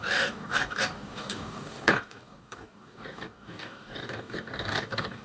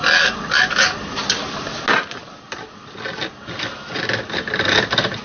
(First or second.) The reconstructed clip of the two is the first